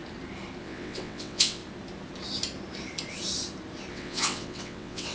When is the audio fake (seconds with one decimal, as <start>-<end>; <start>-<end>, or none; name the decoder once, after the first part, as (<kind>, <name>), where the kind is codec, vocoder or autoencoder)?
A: 0.6-1.6 (vocoder, WaveNeXt); 3.9-5.1